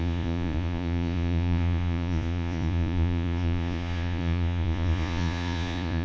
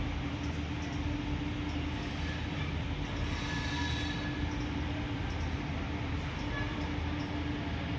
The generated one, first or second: first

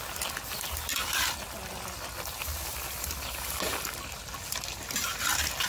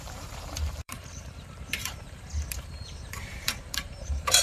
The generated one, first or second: second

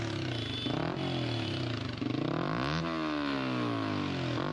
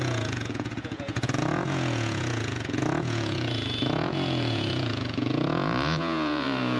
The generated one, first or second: second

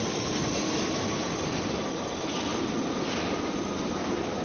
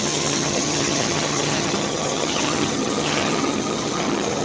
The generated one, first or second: second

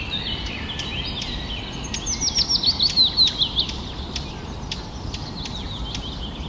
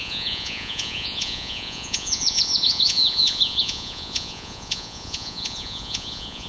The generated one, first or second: second